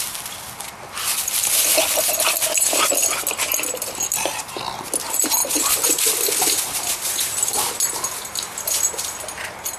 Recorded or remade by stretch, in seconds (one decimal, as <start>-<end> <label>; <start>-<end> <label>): 0.0-9.8 recorded